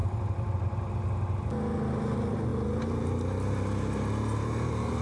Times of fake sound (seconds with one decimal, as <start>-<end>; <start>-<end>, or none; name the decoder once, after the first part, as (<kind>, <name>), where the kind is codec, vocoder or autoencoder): 0.0-0.9 (vocoder, BigVGAN v2)